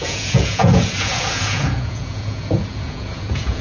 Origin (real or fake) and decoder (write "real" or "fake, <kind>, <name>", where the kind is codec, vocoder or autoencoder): fake, vocoder, Vocos